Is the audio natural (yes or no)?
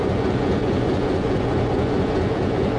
no